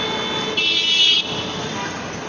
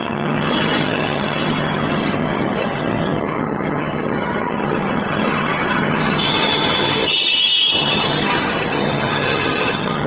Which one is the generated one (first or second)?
second